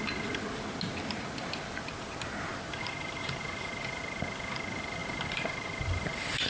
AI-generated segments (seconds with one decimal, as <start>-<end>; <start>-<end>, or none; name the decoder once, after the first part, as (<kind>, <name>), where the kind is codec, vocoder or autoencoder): 2.5-4.0 (vocoder, BigVGAN v2); 5.0-6.5